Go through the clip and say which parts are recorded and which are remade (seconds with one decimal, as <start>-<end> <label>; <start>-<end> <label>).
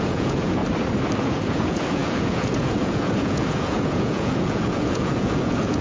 0.0-0.6 remade; 0.6-1.2 recorded; 1.2-5.8 remade